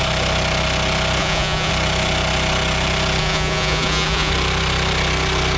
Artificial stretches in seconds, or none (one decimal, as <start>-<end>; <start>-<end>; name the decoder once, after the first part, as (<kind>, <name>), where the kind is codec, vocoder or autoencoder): 1.2-1.7 (vocoder, Vocos); 3.2-4.3